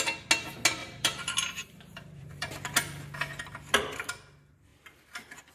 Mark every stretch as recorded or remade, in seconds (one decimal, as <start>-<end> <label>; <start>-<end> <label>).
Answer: 0.0-0.8 recorded; 0.8-2.5 remade; 2.5-5.5 recorded